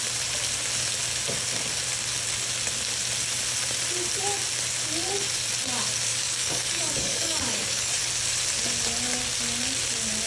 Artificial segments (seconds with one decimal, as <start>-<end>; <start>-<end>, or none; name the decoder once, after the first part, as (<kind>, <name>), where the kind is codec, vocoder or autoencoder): 6.1-8.0 (codec, DAC)